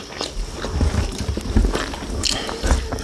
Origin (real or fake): real